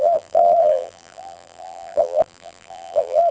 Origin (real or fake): fake